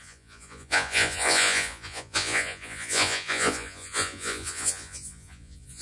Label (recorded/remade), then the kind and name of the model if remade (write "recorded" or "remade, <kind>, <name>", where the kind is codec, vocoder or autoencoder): remade, vocoder, Vocos